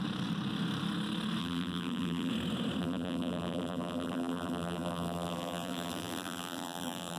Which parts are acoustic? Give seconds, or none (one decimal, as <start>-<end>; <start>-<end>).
0.0-1.4; 2.3-2.8